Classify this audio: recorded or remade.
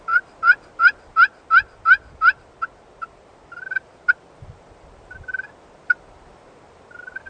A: recorded